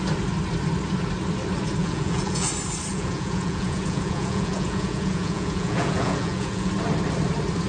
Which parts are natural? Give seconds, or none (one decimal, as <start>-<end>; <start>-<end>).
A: 0.0-1.8; 2.5-2.9; 6.7-7.7